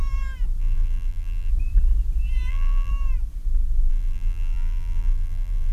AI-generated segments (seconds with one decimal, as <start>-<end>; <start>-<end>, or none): 0.6-1.5; 2.5-2.9; 3.9-5.7